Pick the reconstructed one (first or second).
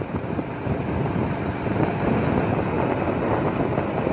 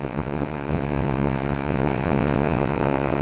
second